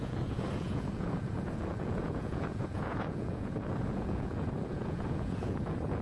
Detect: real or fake fake